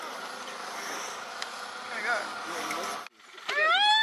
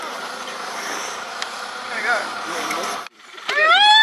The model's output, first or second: second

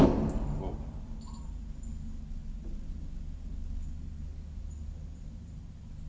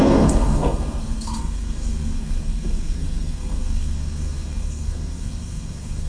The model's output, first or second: second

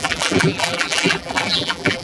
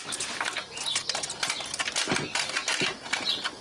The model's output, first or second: first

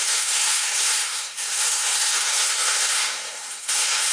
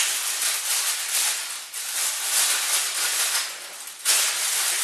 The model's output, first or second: first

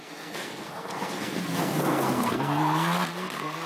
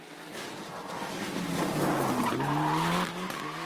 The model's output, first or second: first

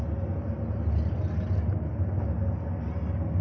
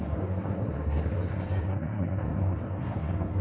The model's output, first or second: second